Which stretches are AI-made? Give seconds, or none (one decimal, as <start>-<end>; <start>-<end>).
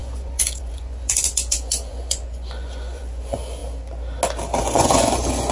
0.0-3.6; 4.6-5.5